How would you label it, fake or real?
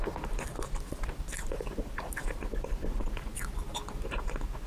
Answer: real